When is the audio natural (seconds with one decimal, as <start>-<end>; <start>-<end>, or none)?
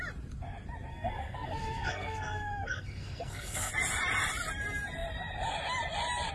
0.0-0.9; 3.7-6.3